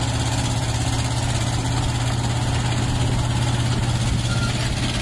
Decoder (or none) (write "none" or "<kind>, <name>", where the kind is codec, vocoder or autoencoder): none